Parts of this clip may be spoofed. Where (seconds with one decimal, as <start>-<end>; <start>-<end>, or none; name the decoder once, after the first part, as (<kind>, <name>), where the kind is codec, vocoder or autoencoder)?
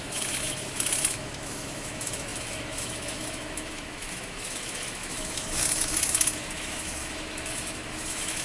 0.0-8.4 (autoencoder, DAC-VAE)